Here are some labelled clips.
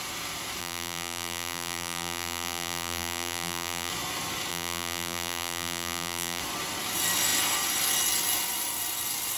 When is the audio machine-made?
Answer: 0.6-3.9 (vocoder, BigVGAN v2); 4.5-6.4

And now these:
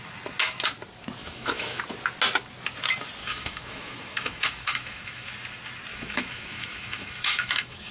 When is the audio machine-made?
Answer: 1.2-1.8 (autoencoder, DAC-VAE); 3.2-5.3; 5.9-7.9

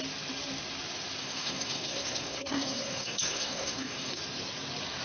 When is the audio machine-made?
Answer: 1.2-4.2 (codec, SNAC)

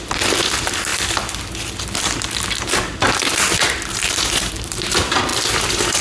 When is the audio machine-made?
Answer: none

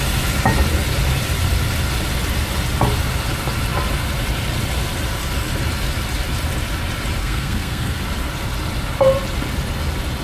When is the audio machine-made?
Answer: 7.2-8.0 (codec, SNAC)

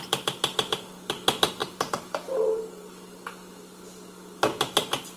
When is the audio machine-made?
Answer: 1.6-2.6 (vocoder, BigVGAN v2)

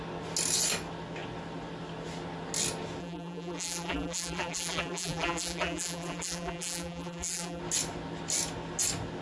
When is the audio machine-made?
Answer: 3.0-7.6 (vocoder, BigVGAN v2)